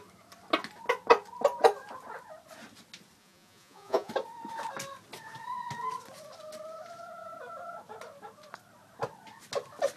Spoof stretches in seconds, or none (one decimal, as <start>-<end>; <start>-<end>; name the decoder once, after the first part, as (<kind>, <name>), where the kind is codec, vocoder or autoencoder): 3.2-4.1 (vocoder, Vocos)